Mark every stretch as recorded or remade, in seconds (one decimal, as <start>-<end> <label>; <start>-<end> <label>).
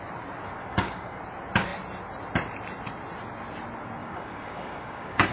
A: 0.0-0.6 recorded; 0.6-1.2 remade; 1.2-4.0 recorded; 4.0-5.3 remade